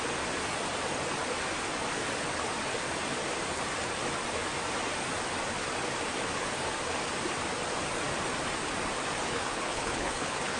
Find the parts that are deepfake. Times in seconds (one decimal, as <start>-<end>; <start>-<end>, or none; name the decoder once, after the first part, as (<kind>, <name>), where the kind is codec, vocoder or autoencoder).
9.2-10.6 (codec, HILCodec)